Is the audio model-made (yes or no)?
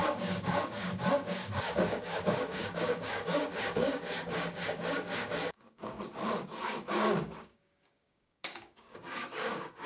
yes